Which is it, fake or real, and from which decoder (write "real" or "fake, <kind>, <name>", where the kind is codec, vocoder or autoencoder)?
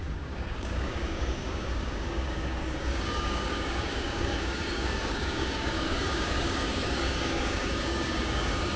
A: fake, codec, DAC